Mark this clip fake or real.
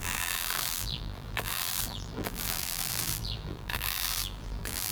fake